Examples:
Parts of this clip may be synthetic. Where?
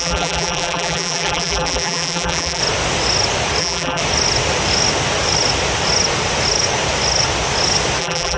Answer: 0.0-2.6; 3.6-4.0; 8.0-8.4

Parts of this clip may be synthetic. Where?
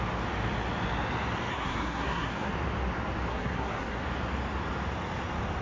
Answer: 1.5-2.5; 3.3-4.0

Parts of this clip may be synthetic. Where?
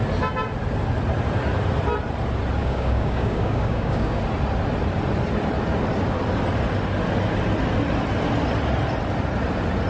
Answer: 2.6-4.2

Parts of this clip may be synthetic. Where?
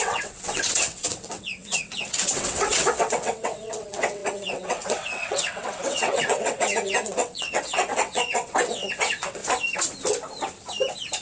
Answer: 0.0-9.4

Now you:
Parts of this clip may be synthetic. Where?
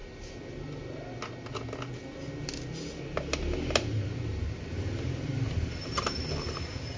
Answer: none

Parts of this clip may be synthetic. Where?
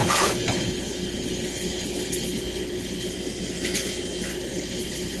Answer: 0.0-3.1; 4.3-5.2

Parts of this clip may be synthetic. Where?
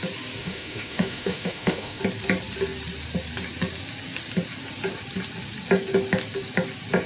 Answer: 0.4-2.0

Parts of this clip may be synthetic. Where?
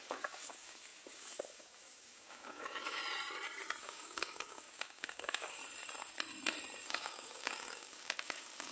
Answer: 0.0-3.0; 3.8-5.6; 6.9-8.7